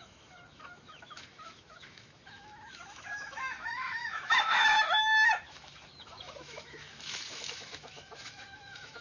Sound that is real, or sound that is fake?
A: fake